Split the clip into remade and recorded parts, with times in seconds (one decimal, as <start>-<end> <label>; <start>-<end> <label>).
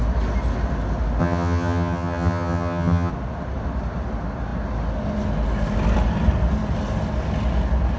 0.0-1.2 recorded; 1.2-3.1 remade; 3.1-8.0 recorded